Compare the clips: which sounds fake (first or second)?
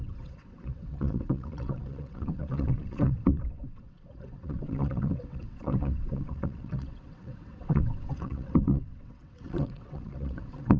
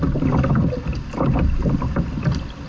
first